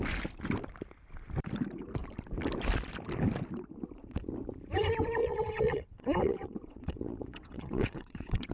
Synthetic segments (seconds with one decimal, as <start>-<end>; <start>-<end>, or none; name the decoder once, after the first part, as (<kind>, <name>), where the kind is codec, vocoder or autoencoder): 5.2-8.5 (vocoder, WaveNeXt)